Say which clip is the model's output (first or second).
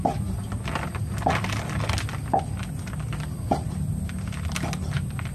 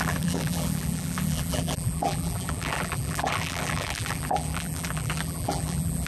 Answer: second